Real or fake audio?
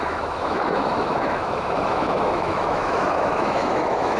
fake